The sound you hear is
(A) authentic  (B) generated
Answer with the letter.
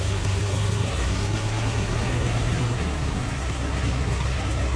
B